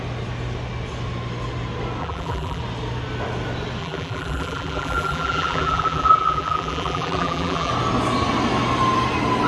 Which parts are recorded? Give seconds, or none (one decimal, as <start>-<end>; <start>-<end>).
0.0-2.0; 2.6-3.8; 7.7-9.5